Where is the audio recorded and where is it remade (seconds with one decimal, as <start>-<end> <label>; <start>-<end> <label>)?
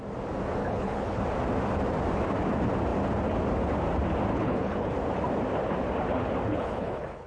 0.0-0.6 recorded; 0.6-1.2 remade; 1.2-4.3 recorded; 4.3-4.9 remade; 4.9-6.5 recorded; 6.5-7.3 remade